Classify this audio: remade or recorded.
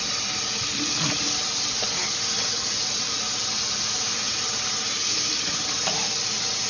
recorded